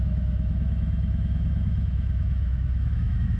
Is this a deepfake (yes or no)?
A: yes